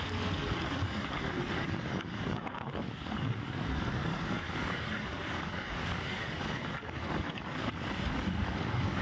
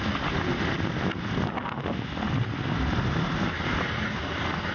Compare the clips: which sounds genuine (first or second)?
second